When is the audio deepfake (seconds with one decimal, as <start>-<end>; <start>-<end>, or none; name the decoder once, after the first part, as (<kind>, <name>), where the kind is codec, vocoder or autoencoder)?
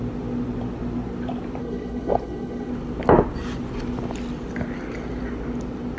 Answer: 1.6-2.7 (codec, HILCodec)